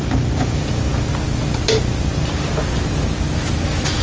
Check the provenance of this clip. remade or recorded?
recorded